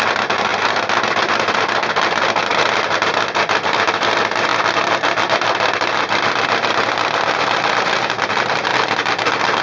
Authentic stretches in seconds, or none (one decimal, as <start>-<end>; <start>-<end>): 8.7-9.6